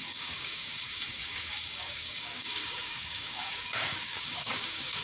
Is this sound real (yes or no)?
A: no